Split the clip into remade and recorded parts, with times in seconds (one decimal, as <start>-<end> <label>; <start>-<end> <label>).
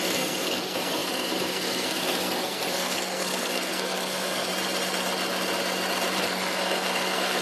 0.0-4.5 remade; 4.5-6.2 recorded; 6.2-7.4 remade